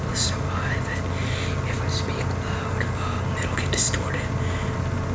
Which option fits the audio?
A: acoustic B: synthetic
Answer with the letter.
A